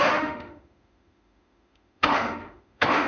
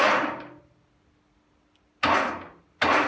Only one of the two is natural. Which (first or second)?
second